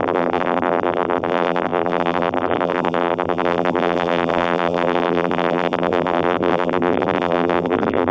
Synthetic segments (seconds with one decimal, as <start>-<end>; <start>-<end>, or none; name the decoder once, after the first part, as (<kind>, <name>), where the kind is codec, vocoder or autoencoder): 0.0-8.1 (vocoder, BigVGAN v2)